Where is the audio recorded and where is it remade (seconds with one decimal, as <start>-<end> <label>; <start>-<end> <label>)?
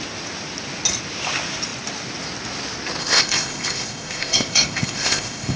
0.0-3.0 recorded; 3.0-5.6 remade